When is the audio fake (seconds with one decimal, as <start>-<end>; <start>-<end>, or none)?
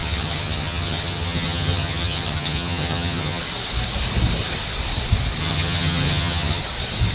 0.0-3.4; 5.4-6.6